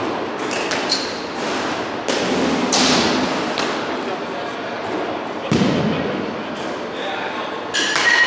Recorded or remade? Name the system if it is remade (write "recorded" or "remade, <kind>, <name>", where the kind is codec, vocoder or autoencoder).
recorded